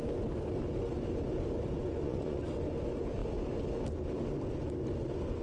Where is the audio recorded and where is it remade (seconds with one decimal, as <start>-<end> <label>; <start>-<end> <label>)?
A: 0.0-1.8 recorded; 1.8-2.4 remade; 2.4-5.4 recorded